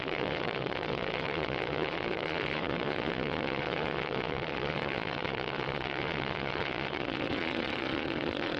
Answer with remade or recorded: remade